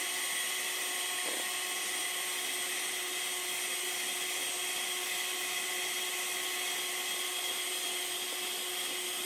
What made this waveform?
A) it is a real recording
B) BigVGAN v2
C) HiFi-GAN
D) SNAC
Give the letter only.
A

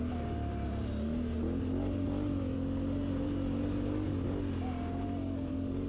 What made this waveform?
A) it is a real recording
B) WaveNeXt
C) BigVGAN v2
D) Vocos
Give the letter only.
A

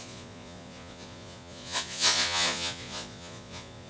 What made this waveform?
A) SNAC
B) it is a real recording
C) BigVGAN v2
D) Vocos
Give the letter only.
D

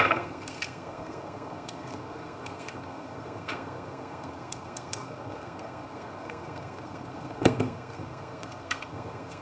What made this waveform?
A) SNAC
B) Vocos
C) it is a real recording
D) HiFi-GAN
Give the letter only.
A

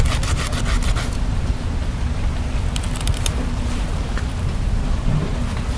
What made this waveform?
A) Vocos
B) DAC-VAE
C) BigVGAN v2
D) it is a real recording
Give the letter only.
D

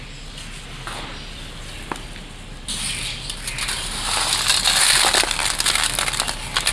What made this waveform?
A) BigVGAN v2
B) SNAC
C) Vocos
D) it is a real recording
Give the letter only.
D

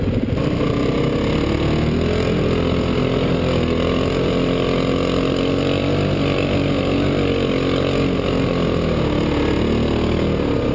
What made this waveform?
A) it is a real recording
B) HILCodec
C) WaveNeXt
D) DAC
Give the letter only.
A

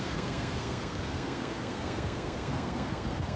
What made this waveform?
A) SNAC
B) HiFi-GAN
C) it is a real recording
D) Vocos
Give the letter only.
A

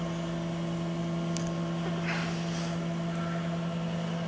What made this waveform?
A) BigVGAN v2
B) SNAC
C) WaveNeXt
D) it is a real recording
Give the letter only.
D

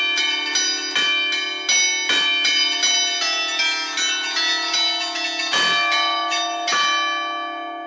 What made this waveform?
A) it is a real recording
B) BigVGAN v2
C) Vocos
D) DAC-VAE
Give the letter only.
A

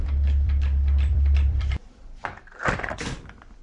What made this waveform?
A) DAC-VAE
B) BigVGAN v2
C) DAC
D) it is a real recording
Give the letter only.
B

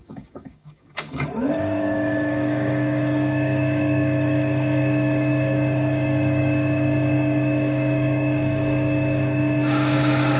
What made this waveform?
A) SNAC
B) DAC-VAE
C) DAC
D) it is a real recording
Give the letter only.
C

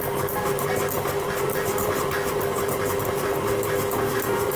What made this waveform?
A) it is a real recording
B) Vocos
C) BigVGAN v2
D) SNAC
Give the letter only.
A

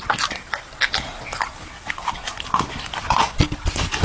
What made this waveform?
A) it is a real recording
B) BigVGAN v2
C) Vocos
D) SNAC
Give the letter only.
A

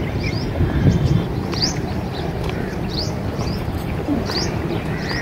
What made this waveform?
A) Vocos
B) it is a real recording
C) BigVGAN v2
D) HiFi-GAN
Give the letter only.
C